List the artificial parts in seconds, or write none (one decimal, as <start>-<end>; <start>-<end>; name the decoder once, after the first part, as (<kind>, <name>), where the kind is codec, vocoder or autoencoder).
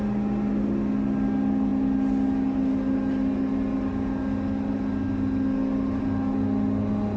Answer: none